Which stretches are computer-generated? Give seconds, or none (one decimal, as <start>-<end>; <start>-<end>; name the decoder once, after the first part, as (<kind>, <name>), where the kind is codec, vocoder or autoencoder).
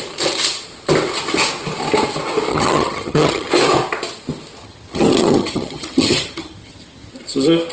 2.5-3.5 (vocoder, HiFi-GAN); 4.6-7.1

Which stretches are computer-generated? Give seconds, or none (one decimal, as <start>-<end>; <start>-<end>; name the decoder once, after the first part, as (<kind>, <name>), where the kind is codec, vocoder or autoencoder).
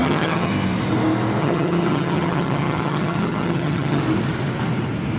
0.0-0.5 (vocoder, HiFi-GAN); 1.4-4.0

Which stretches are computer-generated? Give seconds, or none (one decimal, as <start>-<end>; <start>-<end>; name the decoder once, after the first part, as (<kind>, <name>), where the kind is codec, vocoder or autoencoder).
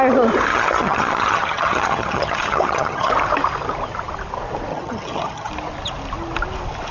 0.5-3.1 (vocoder, HiFi-GAN); 4.7-5.5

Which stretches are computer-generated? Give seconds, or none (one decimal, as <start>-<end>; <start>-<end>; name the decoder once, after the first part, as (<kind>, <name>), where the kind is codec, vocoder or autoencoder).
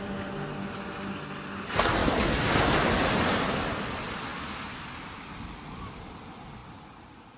none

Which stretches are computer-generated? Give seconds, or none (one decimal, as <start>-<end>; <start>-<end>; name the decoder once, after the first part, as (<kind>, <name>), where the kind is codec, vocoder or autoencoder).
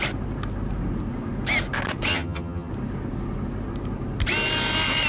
2.1-2.7 (vocoder, HiFi-GAN)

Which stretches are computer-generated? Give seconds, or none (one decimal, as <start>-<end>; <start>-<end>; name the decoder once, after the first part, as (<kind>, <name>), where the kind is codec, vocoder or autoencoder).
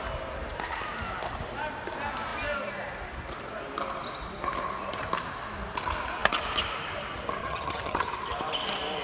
7.4-8.1 (vocoder, HiFi-GAN)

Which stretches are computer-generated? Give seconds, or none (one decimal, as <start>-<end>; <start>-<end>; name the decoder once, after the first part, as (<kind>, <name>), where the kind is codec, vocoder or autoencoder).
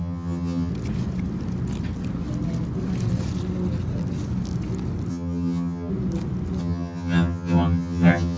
0.0-0.7 (vocoder, HiFi-GAN); 5.1-5.9; 6.6-8.4